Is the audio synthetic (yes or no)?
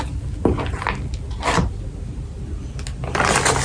no